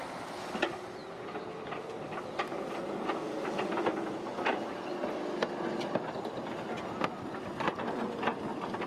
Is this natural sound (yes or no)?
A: yes